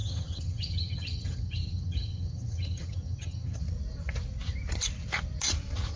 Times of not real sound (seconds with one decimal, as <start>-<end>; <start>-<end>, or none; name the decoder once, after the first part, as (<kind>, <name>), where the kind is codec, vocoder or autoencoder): 0.0-3.6 (vocoder, HiFi-GAN)